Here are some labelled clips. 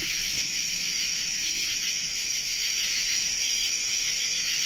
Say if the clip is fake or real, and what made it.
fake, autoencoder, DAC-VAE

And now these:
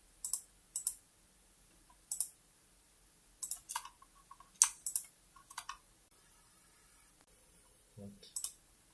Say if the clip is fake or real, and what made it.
real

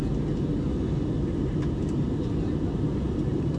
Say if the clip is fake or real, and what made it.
real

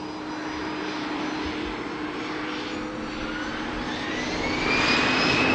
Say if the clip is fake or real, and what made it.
real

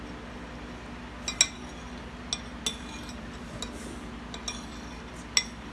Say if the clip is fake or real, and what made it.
real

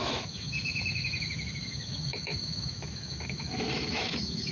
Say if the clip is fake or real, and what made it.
fake, autoencoder, DAC-VAE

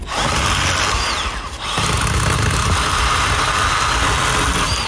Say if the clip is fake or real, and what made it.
real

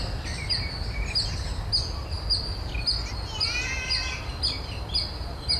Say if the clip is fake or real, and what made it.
real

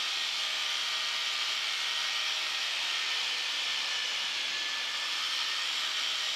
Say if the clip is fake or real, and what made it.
real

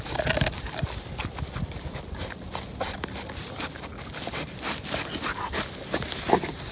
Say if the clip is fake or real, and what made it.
real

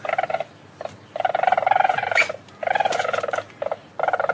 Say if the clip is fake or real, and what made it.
real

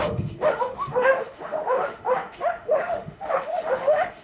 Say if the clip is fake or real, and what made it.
fake, autoencoder, DAC-VAE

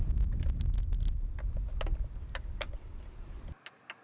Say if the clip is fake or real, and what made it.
real